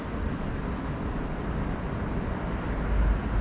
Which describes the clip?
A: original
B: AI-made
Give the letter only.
A